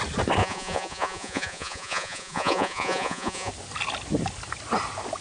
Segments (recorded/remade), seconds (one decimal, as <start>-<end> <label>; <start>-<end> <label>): 0.0-0.4 recorded; 0.4-3.5 remade; 3.5-5.2 recorded